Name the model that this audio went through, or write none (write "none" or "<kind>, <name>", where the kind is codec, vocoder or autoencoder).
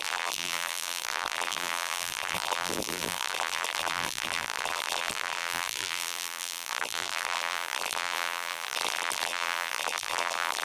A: vocoder, BigVGAN v2